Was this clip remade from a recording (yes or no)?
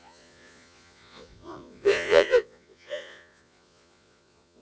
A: yes